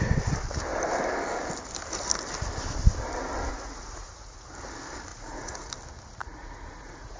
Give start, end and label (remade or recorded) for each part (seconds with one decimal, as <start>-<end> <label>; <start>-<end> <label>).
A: 0.0-3.5 recorded; 3.5-4.5 remade; 4.5-5.1 recorded; 5.1-5.7 remade; 5.7-6.2 recorded; 6.2-7.2 remade